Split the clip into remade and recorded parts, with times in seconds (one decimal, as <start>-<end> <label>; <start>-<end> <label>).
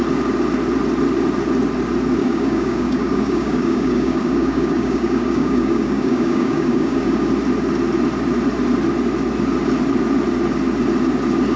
0.0-2.2 recorded; 2.2-7.3 remade; 7.3-11.6 recorded